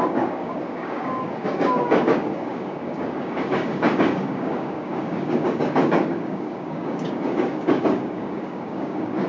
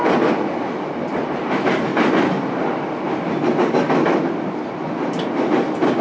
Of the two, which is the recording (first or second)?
second